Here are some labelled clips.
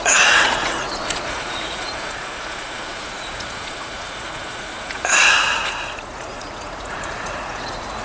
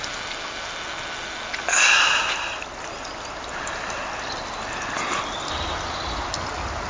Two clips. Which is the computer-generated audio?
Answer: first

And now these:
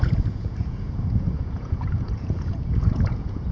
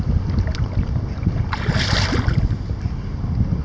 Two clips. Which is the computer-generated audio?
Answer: first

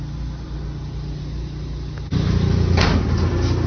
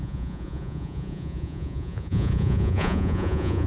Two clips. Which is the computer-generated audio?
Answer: second